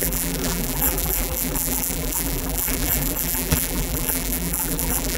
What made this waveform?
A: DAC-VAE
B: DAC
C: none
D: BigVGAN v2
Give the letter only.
D